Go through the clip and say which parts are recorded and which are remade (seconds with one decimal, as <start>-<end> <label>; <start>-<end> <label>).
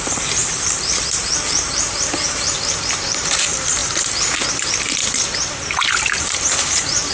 0.0-3.8 remade; 3.8-4.5 recorded; 4.5-5.0 remade; 5.0-6.2 recorded; 6.2-7.1 remade